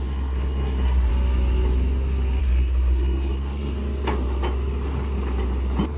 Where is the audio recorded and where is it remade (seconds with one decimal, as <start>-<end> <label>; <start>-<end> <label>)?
0.0-1.1 remade; 1.1-2.4 recorded; 2.4-3.7 remade; 3.7-6.0 recorded